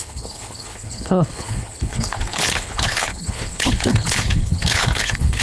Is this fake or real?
fake